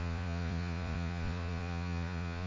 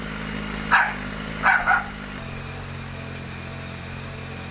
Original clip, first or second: second